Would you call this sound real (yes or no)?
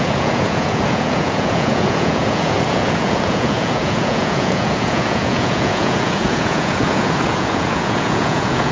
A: no